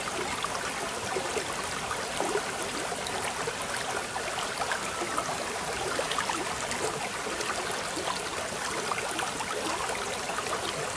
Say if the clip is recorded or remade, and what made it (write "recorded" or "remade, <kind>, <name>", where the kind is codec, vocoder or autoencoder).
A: recorded